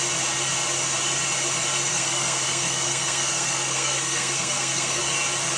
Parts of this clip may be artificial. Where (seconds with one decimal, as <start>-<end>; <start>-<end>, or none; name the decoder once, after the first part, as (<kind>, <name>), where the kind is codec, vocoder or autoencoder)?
1.9-5.0 (codec, SNAC)

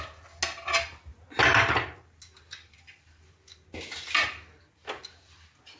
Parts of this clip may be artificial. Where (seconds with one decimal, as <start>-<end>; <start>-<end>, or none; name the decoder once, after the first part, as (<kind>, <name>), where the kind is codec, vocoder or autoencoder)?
none

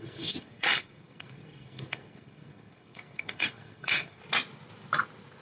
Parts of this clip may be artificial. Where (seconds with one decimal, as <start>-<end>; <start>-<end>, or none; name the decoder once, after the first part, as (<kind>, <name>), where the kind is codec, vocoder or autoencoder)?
0.0-4.2 (codec, SNAC)

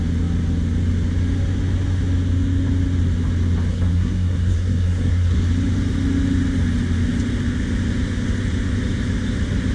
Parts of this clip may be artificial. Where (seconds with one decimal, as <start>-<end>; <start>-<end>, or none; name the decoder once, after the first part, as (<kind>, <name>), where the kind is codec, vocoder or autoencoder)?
3.7-5.4 (codec, SNAC)